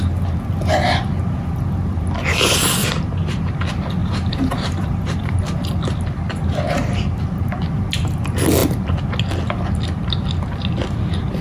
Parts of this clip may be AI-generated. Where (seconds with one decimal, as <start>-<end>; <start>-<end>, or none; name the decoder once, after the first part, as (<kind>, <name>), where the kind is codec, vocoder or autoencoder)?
2.8-3.6 (vocoder, BigVGAN v2); 4.0-5.5